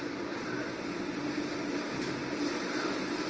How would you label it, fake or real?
real